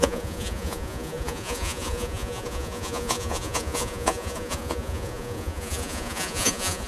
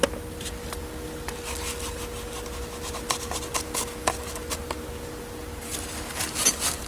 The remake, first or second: first